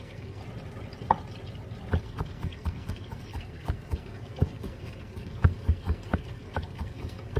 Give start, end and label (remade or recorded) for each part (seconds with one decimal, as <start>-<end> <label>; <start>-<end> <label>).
0.0-0.4 remade; 0.4-2.0 recorded; 2.0-7.4 remade